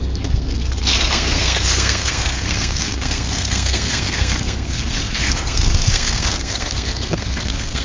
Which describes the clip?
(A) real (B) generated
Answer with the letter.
B